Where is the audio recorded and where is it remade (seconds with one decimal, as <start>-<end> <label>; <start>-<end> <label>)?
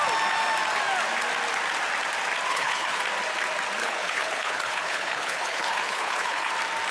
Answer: 0.0-2.5 recorded; 2.5-3.0 remade; 3.0-3.8 recorded; 3.8-6.5 remade; 6.5-6.9 recorded